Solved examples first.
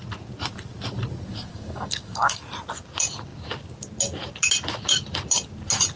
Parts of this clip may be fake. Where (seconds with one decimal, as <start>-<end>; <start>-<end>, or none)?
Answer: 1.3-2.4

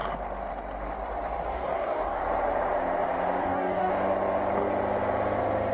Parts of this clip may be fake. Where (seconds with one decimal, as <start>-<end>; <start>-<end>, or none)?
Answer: 1.5-2.2; 3.4-3.9

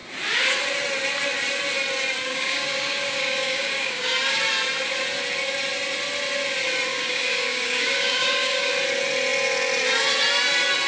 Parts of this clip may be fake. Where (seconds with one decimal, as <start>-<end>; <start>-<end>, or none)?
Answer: 2.3-4.4; 6.9-8.7

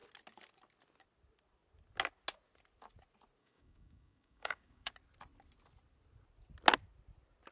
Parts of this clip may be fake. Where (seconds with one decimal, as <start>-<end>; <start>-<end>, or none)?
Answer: 3.4-4.9